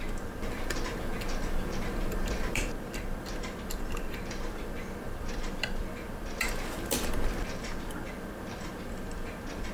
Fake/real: fake